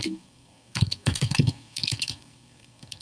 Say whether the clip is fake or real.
fake